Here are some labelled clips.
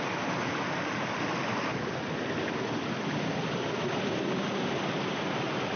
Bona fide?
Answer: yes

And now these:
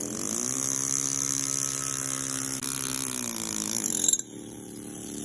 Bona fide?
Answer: yes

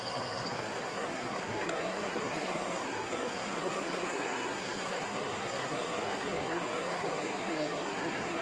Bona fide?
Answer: no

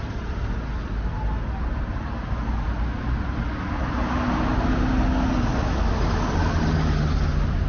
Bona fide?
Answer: yes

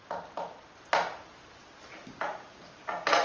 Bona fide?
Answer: yes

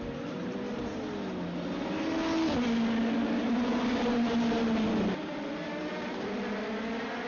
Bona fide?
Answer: yes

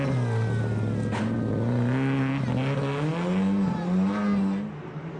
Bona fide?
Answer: yes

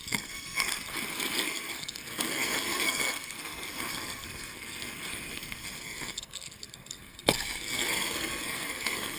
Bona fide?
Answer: no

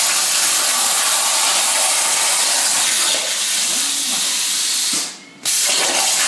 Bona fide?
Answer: yes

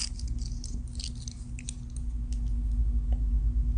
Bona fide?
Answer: yes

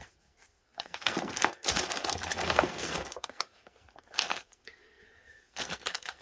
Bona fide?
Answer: no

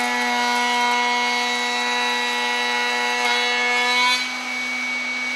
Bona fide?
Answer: yes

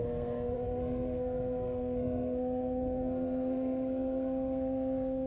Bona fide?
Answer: no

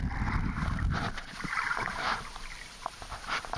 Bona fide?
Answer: yes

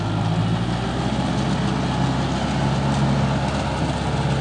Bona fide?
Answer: yes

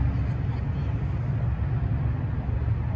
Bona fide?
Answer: yes